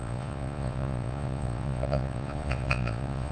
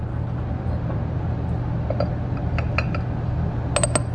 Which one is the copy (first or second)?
first